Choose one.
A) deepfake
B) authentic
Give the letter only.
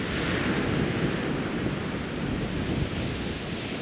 B